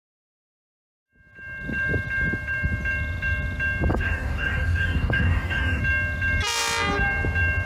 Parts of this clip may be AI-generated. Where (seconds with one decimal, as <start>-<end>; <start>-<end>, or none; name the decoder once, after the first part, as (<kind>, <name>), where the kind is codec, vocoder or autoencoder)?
3.9-5.8 (codec, DAC)

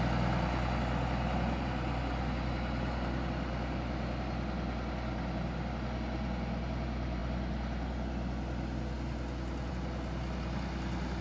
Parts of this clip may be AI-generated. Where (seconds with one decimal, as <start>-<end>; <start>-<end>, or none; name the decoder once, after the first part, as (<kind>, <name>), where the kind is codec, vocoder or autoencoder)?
none

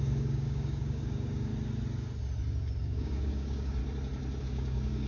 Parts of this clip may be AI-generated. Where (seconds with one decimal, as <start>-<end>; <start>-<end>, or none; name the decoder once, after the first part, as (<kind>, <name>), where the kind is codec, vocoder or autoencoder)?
0.0-1.5 (codec, DAC); 2.8-3.8; 4.4-5.1

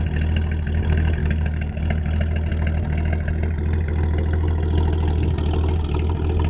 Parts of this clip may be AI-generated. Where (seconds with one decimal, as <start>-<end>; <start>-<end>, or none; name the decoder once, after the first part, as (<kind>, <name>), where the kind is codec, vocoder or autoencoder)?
1.2-1.8 (codec, DAC)

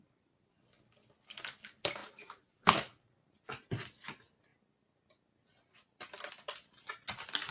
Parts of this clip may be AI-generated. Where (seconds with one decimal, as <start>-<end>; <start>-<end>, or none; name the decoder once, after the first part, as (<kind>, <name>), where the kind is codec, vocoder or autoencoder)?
none

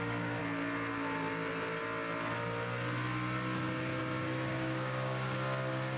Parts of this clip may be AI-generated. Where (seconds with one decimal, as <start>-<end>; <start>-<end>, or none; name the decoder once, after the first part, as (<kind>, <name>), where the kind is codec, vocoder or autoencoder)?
0.0-0.4 (codec, DAC); 4.0-6.0

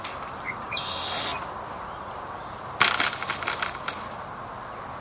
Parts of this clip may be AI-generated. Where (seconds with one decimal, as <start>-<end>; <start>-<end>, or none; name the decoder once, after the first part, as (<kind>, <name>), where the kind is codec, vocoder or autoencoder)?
none